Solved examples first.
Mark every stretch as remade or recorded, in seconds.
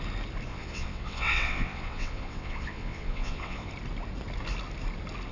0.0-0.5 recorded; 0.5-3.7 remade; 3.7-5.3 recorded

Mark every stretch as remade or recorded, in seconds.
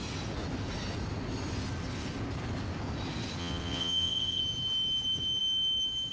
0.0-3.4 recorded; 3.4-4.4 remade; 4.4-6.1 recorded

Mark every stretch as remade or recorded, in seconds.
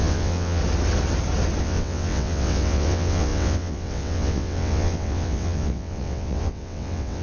0.0-0.6 remade; 0.6-1.6 recorded; 1.6-7.2 remade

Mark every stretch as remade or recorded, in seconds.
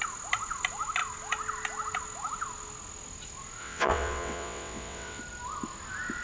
0.0-3.6 recorded; 3.6-5.2 remade; 5.2-6.2 recorded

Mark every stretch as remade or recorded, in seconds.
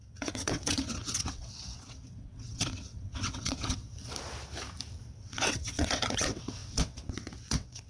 0.0-3.8 remade; 3.8-5.2 recorded; 5.2-7.9 remade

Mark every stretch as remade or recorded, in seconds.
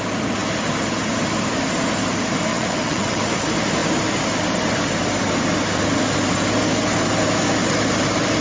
0.0-2.5 recorded; 2.5-3.2 remade; 3.2-8.4 recorded